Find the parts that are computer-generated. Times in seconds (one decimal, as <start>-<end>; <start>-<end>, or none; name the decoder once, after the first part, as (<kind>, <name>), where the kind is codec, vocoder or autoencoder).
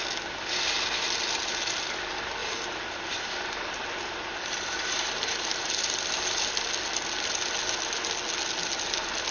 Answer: 2.4-5.7 (vocoder, BigVGAN v2)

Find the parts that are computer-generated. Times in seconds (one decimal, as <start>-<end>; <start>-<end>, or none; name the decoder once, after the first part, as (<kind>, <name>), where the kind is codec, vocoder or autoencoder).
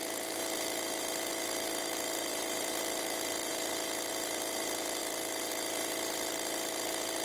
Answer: 2.3-2.8 (vocoder, BigVGAN v2)